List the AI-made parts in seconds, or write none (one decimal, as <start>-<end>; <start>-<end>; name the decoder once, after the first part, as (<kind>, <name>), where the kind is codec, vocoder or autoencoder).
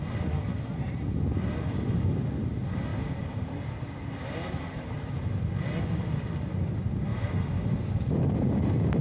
2.9-5.5 (vocoder, BigVGAN v2); 7.1-8.2